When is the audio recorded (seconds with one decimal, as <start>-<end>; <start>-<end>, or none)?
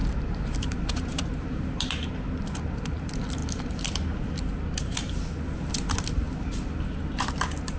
1.6-7.8